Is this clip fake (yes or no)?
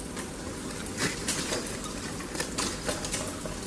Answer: yes